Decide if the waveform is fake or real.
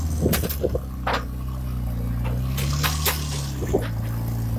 real